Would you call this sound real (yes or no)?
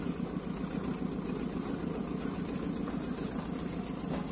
yes